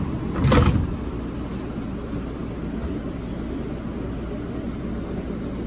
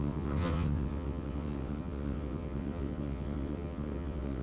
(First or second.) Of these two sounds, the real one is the first